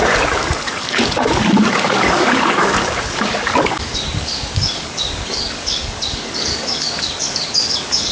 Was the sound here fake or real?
fake